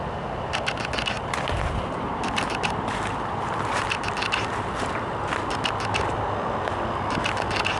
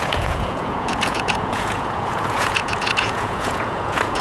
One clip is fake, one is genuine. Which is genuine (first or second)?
first